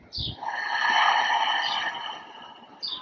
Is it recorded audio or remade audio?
recorded